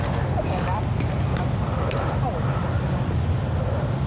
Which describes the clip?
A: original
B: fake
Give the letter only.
A